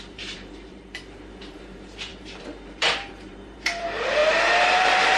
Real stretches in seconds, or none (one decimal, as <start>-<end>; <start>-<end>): 4.2-4.8